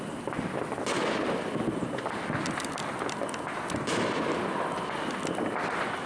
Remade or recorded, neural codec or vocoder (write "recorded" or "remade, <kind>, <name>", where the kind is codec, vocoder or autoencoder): recorded